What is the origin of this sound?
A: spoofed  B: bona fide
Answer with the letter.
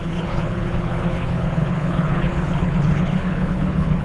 A